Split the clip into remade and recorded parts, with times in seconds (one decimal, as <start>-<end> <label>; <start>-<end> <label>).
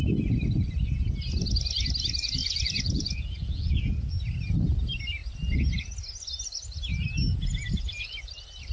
0.0-2.4 recorded; 2.4-3.9 remade; 3.9-8.7 recorded